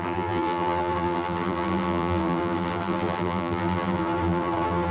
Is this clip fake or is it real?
fake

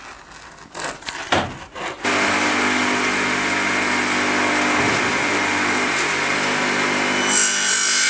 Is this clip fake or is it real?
real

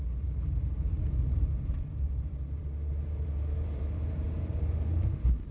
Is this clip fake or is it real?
fake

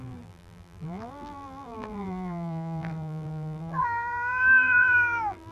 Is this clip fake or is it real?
fake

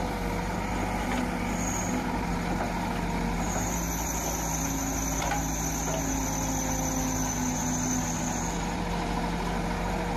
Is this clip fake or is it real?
real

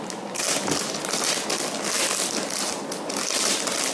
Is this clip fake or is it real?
real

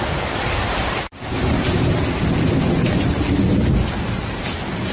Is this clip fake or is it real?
fake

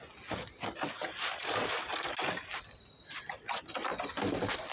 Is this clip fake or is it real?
real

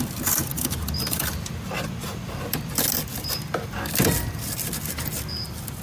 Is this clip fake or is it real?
real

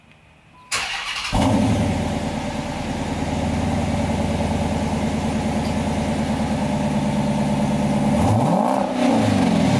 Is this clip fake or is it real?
real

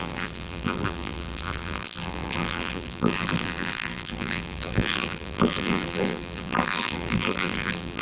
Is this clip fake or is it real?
fake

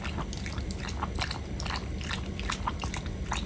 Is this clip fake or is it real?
fake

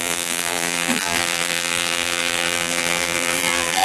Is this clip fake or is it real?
fake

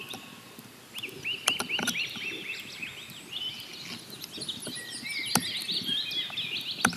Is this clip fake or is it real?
real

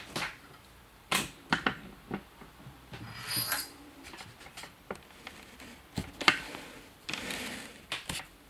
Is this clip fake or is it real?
fake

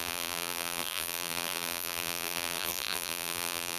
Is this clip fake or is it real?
fake